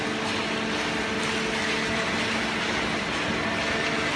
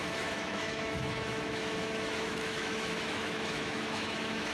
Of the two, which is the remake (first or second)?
second